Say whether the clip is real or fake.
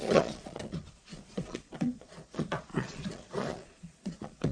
fake